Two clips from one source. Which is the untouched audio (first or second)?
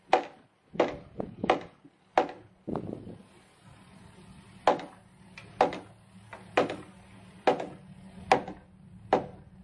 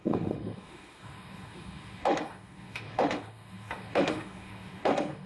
first